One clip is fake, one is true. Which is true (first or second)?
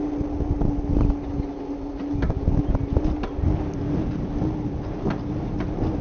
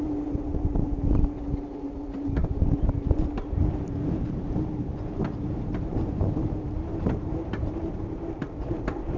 first